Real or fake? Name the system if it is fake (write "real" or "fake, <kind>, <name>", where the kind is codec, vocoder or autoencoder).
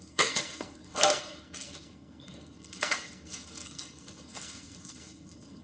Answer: fake, codec, SNAC